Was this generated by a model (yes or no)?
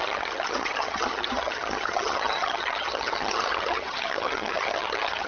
yes